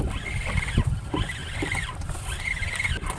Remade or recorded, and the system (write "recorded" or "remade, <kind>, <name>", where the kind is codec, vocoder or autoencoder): recorded